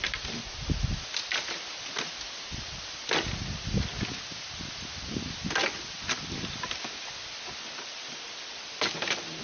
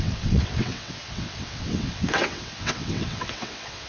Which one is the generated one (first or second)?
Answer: second